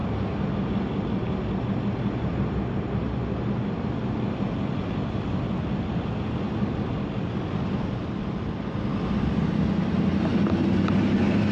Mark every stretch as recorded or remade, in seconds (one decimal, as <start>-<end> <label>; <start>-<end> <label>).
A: 0.0-11.5 recorded